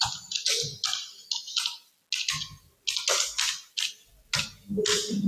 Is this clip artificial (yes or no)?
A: no